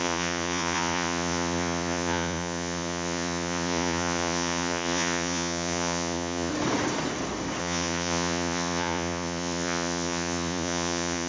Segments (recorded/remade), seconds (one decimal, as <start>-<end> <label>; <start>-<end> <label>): 0.0-6.5 remade; 6.5-7.6 recorded; 7.6-11.3 remade